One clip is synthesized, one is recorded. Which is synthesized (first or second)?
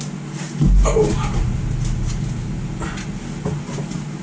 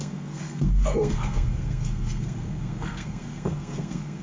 second